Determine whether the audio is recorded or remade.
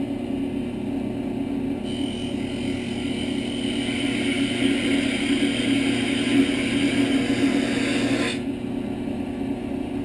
recorded